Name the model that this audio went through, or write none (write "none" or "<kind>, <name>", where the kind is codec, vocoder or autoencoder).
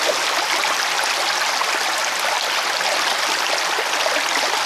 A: none